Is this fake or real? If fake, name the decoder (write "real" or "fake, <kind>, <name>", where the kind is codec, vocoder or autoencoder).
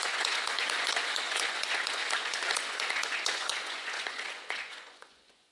fake, vocoder, Vocos